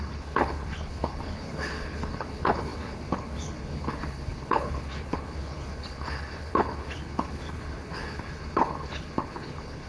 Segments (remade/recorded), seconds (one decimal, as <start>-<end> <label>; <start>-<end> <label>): 0.0-9.9 remade